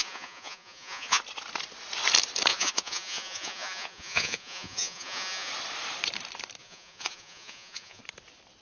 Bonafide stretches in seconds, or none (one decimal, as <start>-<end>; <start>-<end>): 1.2-2.5; 5.5-6.6; 8.0-8.6